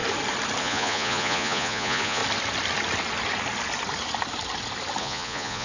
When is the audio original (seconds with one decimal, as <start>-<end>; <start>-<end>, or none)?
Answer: 0.0-0.6; 2.2-5.0